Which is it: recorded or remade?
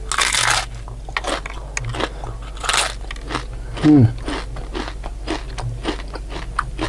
recorded